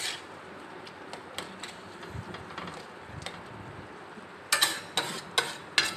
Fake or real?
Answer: real